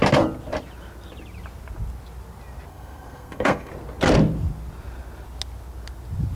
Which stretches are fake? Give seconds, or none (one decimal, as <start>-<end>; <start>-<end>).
2.7-3.7